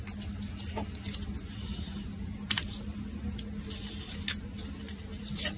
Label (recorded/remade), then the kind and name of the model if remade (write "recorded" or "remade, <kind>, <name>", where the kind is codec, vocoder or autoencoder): recorded